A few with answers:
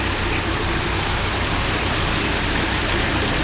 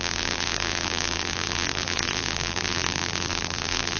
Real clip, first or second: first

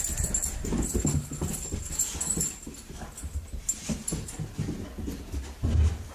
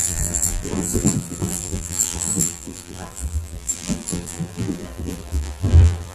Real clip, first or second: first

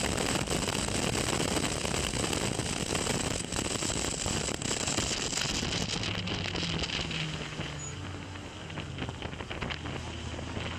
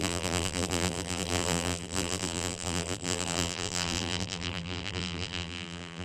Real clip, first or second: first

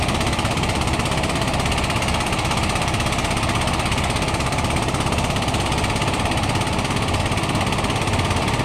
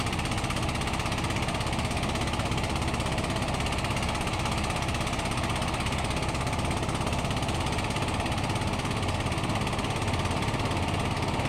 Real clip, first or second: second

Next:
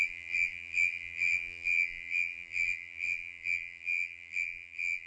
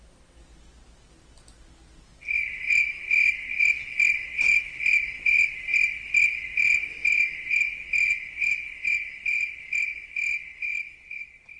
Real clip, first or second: second